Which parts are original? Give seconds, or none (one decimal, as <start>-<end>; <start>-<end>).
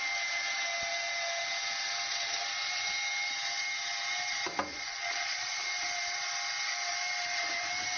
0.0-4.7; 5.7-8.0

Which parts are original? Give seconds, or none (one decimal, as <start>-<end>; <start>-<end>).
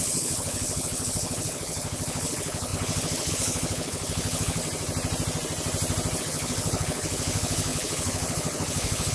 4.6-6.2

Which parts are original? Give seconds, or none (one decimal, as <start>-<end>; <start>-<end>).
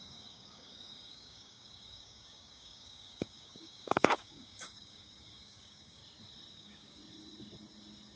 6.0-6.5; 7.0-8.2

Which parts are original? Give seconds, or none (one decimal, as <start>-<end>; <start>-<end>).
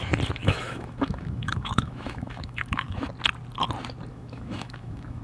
0.0-0.4; 3.1-4.1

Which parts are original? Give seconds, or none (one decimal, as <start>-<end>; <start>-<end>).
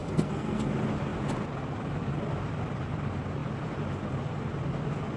0.7-5.2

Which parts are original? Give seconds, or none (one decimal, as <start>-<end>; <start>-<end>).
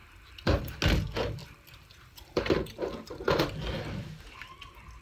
0.8-1.4; 3.4-5.0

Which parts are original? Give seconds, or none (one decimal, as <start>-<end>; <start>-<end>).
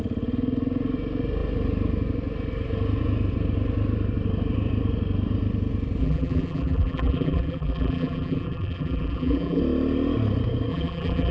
0.0-6.0; 9.6-10.7